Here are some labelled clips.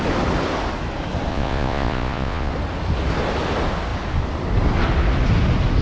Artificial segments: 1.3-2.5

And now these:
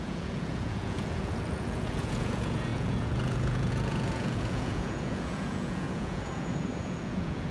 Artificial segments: 0.0-7.5

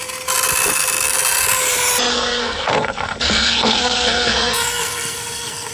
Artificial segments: 2.1-5.7

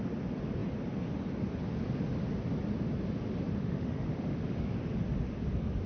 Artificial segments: 3.6-4.7

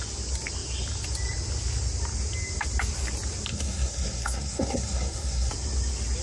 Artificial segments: 3.5-5.5